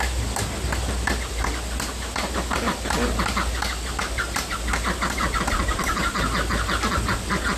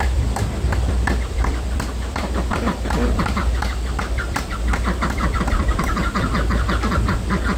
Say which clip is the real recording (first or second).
first